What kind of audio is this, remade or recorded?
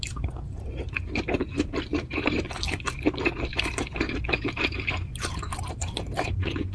remade